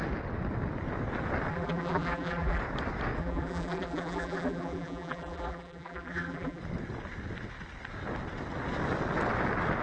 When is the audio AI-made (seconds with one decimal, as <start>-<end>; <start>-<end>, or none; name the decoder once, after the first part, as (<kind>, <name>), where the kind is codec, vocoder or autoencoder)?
1.5-2.6 (vocoder, BigVGAN v2); 3.2-6.6